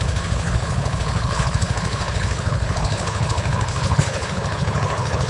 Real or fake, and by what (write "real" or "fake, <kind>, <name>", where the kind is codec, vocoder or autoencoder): fake, codec, HILCodec